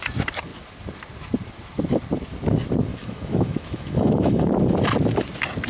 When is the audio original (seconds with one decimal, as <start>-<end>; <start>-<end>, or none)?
0.0-2.9; 4.5-5.7